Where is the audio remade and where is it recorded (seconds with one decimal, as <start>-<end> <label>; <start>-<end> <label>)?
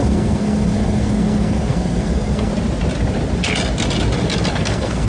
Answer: 0.0-2.5 remade; 2.5-4.5 recorded; 4.5-5.1 remade